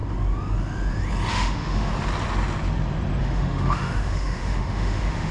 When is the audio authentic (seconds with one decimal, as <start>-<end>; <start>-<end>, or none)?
0.0-1.3; 1.9-3.2